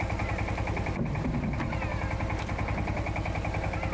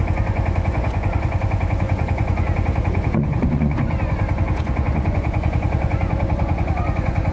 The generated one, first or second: second